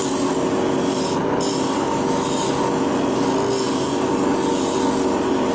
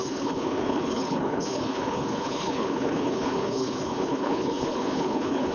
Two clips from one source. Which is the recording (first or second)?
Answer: first